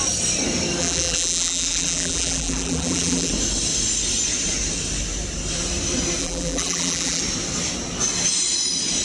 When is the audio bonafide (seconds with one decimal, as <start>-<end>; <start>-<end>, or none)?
0.0-0.8; 3.3-6.2; 7.2-9.0